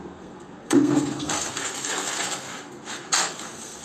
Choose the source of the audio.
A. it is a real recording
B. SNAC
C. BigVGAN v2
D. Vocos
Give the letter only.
B